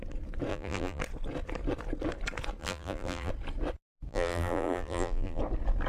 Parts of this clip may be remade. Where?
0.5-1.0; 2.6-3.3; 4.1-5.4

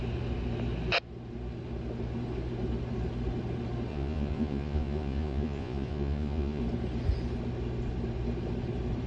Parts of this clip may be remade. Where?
3.9-6.6

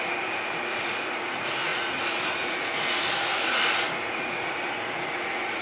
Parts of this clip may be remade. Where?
0.0-5.6

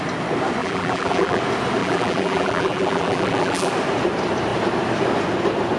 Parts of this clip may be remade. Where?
0.6-1.4; 1.8-3.7

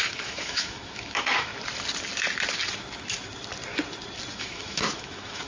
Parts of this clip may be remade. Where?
0.0-1.5; 4.4-5.5

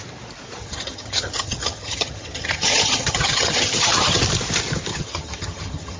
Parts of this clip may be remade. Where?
0.6-4.2; 4.9-6.0